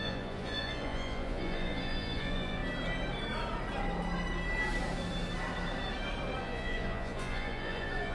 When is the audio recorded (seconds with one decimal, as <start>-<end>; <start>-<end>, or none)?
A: 2.6-6.4